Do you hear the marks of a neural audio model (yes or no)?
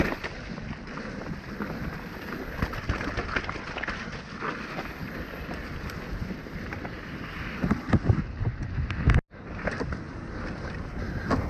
no